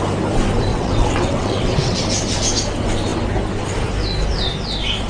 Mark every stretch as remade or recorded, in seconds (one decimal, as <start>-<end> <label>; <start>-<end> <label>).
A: 0.0-0.7 recorded; 0.7-2.0 remade; 2.0-5.1 recorded